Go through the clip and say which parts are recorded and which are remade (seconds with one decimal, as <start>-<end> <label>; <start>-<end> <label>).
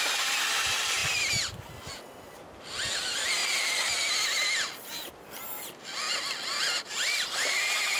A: 0.0-3.4 recorded; 3.4-8.0 remade